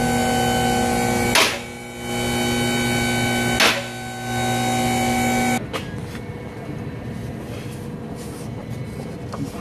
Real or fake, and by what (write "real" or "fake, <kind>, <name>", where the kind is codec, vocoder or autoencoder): real